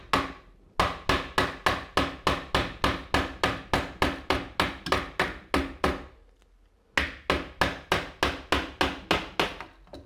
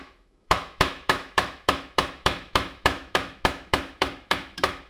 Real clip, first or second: first